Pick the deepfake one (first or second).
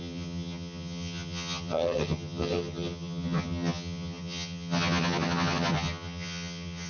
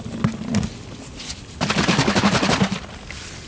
first